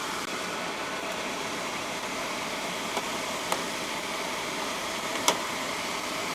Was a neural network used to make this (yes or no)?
yes